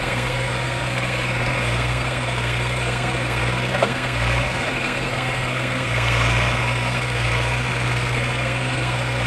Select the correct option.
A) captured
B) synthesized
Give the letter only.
B